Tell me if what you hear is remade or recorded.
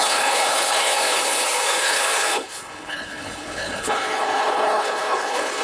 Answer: remade